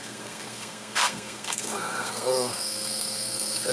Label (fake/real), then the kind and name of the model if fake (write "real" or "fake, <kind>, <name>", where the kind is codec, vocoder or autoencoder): fake, codec, SNAC